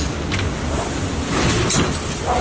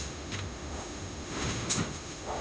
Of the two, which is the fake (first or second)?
second